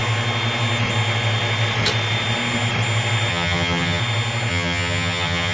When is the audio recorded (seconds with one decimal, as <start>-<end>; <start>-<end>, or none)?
0.0-3.3; 4.0-4.5